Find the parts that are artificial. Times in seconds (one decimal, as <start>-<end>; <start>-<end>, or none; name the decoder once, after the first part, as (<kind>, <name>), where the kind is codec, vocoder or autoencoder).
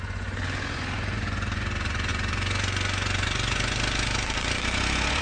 0.0-5.2 (vocoder, Vocos)